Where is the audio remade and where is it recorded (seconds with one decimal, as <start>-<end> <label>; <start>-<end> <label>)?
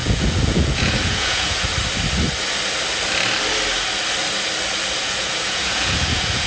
0.0-1.7 remade; 1.7-4.9 recorded; 4.9-6.5 remade